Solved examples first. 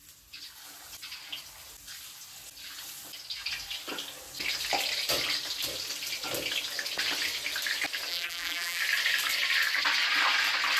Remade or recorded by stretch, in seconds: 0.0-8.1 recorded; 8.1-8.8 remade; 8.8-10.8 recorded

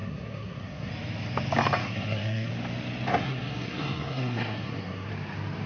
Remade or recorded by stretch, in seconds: 0.0-0.9 remade; 0.9-1.8 recorded; 1.8-2.5 remade; 2.5-3.1 recorded; 3.1-5.1 remade; 5.1-5.7 recorded

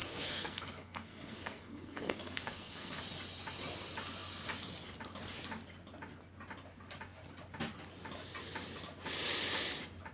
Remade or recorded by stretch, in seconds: 0.0-3.0 remade; 3.0-10.1 recorded

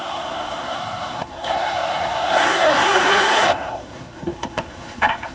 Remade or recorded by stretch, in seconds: 0.0-5.3 remade

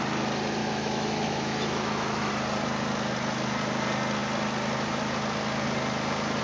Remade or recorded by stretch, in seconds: 0.0-0.6 recorded; 0.6-2.3 remade; 2.3-6.4 recorded

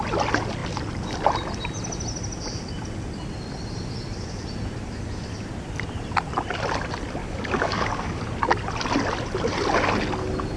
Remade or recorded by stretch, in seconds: 0.0-7.2 recorded; 7.2-8.2 remade; 8.2-10.6 recorded

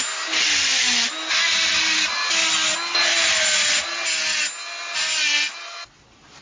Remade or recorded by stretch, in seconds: 0.0-6.4 recorded